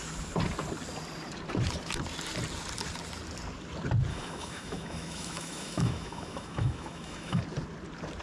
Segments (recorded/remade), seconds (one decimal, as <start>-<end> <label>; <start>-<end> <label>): 0.0-4.1 recorded; 4.1-7.4 remade; 7.4-8.2 recorded